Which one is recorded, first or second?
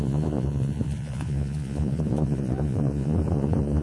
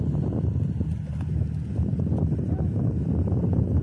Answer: second